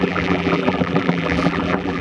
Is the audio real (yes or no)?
no